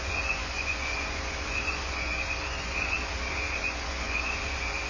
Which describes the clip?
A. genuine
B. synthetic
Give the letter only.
B